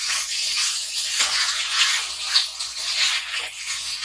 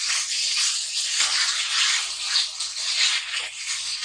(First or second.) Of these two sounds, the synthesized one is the first